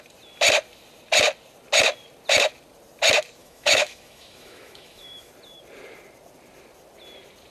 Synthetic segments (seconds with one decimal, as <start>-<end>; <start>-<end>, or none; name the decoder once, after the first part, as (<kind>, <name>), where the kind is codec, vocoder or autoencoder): 3.4-5.3 (autoencoder, DAC-VAE)